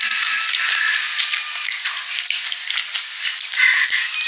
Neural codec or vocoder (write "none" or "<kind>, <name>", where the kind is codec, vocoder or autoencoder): none